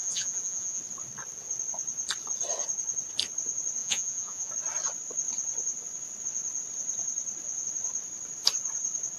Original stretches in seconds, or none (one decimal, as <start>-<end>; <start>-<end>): 0.8-3.8; 4.5-9.2